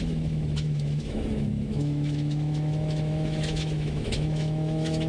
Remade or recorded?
remade